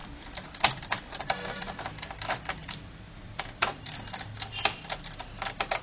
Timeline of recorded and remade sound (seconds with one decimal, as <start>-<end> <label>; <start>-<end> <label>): 0.0-1.7 remade; 1.7-2.6 recorded; 2.6-5.3 remade; 5.3-5.8 recorded